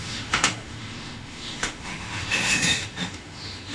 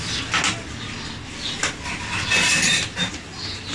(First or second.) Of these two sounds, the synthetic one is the first